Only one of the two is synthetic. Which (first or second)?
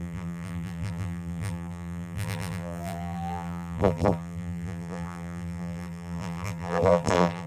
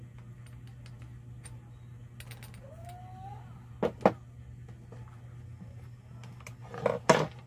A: first